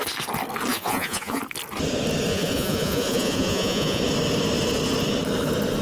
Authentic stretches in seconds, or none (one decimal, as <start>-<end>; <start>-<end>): 0.0-0.7; 1.4-2.3; 4.0-5.8